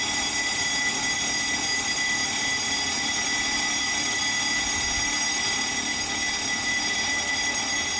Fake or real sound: real